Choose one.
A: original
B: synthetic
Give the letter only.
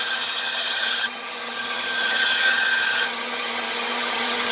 B